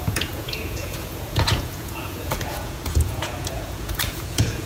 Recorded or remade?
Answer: remade